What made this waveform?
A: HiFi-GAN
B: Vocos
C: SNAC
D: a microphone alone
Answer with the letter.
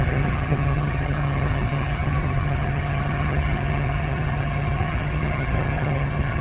A